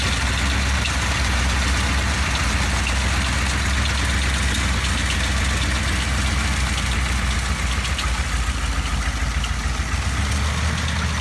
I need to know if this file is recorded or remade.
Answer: recorded